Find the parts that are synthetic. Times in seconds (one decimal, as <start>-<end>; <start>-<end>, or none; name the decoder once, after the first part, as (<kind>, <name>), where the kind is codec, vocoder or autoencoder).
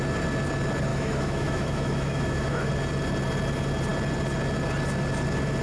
0.9-2.7 (autoencoder, DAC-VAE)